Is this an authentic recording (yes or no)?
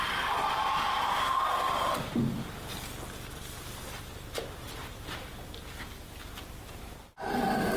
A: no